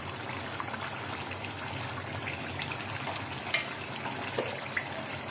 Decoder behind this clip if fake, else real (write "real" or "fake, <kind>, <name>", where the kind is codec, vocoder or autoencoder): real